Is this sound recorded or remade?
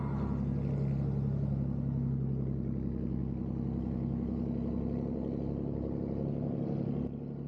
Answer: recorded